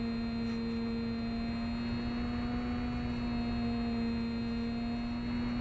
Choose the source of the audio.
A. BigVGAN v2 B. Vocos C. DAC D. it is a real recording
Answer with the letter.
D